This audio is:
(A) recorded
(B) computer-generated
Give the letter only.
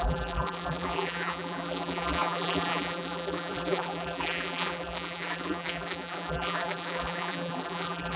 B